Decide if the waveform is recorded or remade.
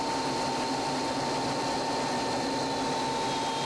recorded